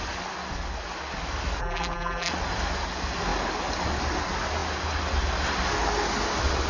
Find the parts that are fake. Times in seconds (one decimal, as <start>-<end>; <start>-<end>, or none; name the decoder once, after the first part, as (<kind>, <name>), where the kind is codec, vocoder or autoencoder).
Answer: 1.6-2.3 (vocoder, BigVGAN v2)